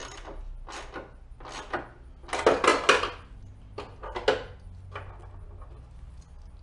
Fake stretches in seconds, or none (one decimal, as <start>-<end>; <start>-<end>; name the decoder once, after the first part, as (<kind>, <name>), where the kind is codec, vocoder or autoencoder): none